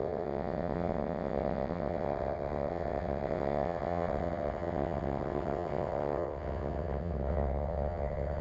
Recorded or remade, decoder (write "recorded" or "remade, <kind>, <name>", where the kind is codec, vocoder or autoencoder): remade, vocoder, WaveNeXt